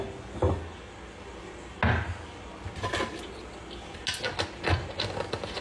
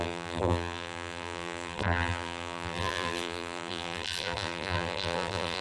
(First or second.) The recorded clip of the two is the first